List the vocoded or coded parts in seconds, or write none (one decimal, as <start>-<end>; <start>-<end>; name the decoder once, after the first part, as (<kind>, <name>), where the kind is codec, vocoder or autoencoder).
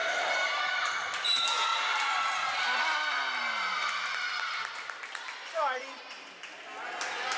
none